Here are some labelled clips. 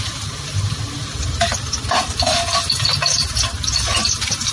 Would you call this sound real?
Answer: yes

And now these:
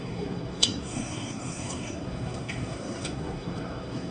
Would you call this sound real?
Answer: no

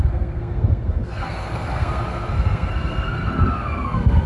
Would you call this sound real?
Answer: no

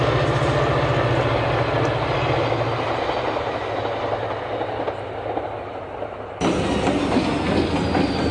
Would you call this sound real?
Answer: yes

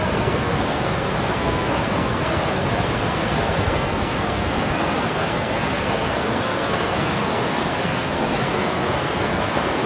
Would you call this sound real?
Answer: no